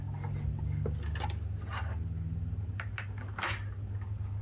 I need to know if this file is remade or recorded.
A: recorded